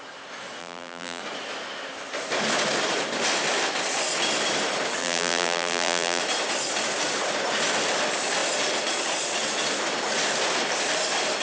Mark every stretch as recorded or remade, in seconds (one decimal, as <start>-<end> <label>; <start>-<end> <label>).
0.0-0.6 recorded; 0.6-1.2 remade; 1.2-5.0 recorded; 5.0-6.2 remade; 6.2-11.4 recorded